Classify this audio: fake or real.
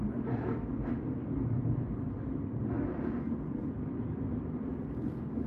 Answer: real